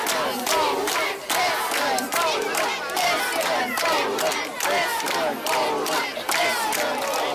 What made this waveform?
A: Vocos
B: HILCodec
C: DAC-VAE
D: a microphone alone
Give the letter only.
D